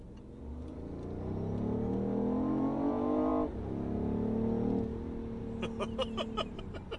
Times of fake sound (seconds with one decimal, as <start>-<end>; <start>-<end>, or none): none